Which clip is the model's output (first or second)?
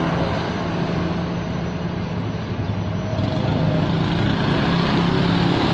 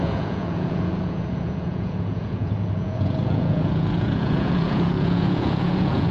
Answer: second